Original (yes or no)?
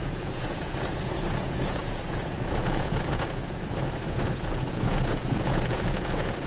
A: no